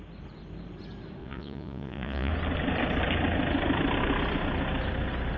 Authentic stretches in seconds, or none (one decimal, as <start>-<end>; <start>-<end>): 0.0-1.2; 2.3-5.4